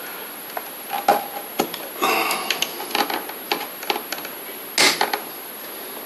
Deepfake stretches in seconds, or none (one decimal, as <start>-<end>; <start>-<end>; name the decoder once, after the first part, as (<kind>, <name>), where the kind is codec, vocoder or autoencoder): none